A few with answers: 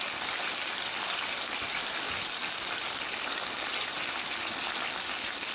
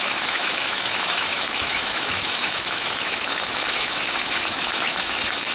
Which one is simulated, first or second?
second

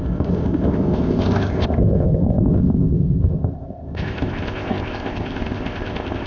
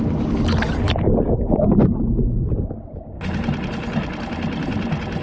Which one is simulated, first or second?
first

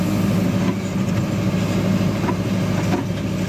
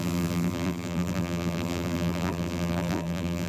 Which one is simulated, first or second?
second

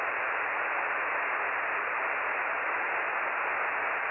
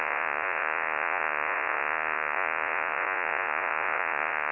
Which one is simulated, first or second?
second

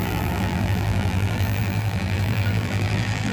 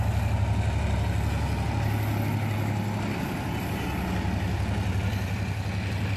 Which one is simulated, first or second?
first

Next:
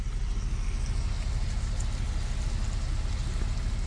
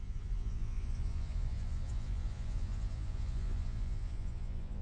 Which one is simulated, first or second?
second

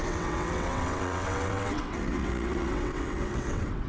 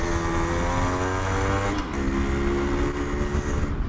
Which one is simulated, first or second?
first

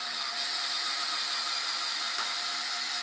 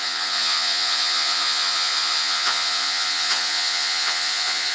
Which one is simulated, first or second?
second